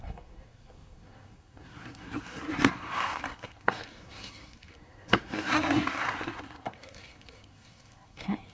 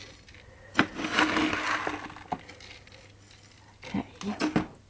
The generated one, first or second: first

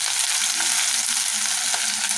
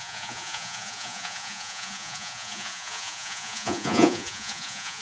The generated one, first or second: second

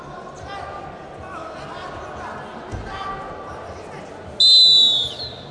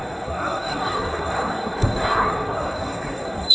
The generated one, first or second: second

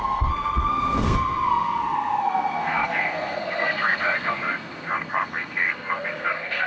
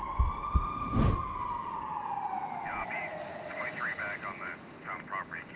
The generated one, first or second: first